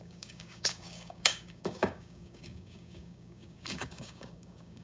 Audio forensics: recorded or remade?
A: remade